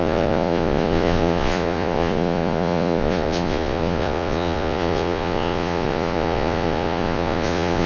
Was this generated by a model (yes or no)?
yes